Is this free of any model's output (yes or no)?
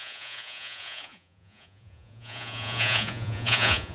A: no